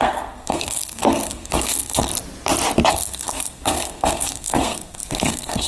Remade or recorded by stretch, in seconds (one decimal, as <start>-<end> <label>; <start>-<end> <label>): 0.0-2.1 remade; 2.1-2.9 recorded; 2.9-5.7 remade